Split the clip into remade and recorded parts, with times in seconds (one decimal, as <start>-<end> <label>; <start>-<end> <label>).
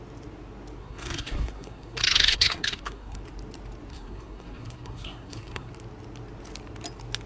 0.0-0.8 recorded; 0.8-3.2 remade; 3.2-3.9 recorded; 3.9-5.7 remade; 5.7-7.3 recorded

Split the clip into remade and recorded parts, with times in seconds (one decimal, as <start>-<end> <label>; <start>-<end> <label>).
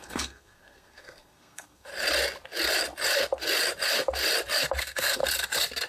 0.0-1.9 remade; 1.9-4.8 recorded; 4.8-5.2 remade; 5.2-5.9 recorded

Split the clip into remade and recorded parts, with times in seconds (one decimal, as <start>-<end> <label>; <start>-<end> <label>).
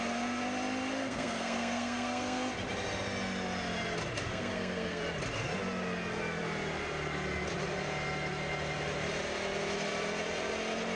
0.0-1.0 recorded; 1.0-2.5 remade; 2.5-4.3 recorded; 4.3-5.0 remade; 5.0-11.0 recorded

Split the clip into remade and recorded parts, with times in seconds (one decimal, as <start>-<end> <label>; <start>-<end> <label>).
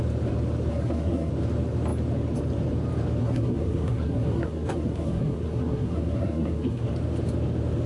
0.0-0.7 recorded; 0.7-1.3 remade; 1.3-3.2 recorded; 3.2-6.9 remade; 6.9-7.9 recorded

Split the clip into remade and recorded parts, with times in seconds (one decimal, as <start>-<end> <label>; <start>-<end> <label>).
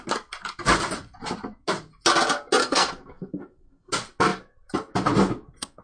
0.0-2.6 recorded; 2.6-3.9 remade; 3.9-5.8 recorded